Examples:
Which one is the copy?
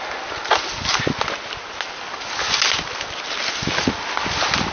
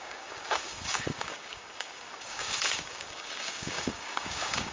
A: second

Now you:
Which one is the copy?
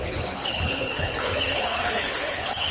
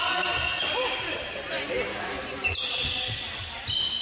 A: first